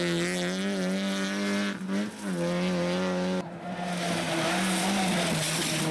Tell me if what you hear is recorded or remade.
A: recorded